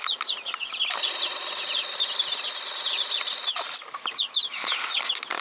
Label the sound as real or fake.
real